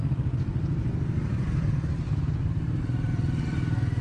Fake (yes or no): no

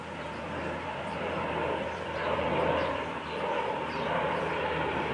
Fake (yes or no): yes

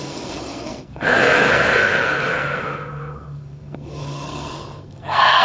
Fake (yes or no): yes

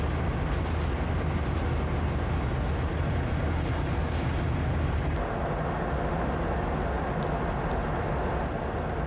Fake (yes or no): no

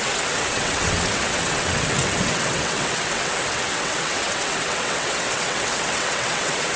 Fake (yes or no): yes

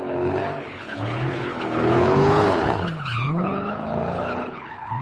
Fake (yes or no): yes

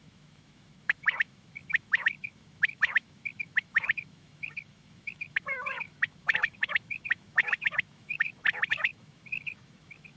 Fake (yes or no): yes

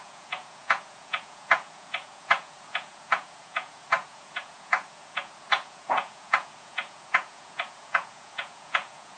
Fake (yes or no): yes